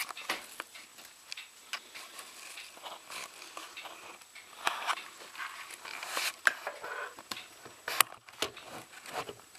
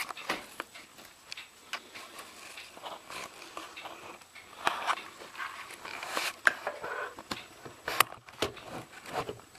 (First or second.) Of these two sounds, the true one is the first